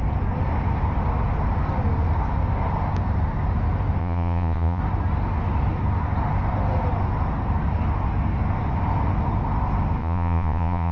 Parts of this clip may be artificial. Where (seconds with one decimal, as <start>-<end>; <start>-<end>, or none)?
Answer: 4.0-4.8; 10.0-10.9